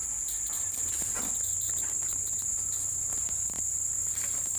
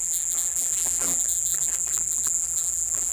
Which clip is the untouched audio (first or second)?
first